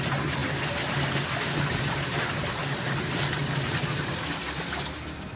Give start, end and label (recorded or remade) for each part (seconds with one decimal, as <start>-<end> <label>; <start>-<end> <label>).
0.0-2.1 recorded; 2.1-4.4 remade; 4.4-5.4 recorded